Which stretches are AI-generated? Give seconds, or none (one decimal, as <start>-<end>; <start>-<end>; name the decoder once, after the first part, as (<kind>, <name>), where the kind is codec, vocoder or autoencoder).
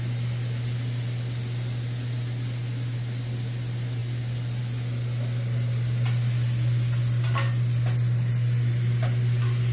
none